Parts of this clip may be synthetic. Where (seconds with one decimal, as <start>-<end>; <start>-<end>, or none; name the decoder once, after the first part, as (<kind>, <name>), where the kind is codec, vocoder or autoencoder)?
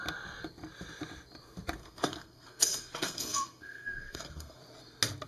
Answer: 1.8-4.6 (codec, SNAC)